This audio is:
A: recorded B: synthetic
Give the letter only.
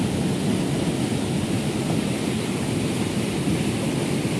A